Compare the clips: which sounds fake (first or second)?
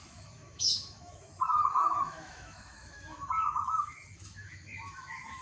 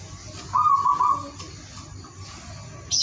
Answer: first